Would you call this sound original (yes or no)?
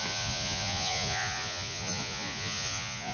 no